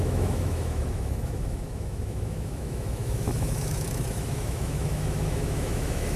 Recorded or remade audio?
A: remade